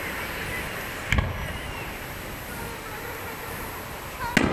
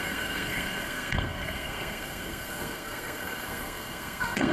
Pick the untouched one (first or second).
first